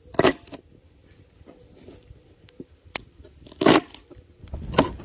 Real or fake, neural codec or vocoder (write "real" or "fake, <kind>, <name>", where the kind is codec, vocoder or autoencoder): real